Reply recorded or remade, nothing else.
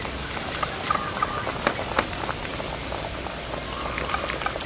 recorded